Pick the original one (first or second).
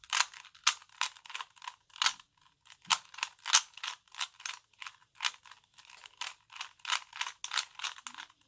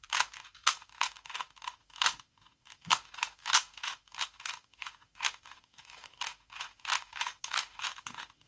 first